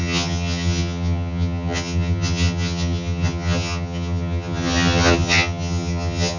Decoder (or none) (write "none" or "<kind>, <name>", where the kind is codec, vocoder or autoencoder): vocoder, HiFi-GAN